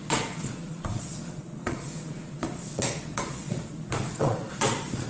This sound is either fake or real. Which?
fake